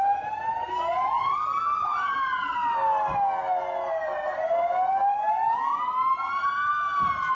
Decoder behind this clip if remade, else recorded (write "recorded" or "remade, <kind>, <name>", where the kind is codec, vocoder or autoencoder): recorded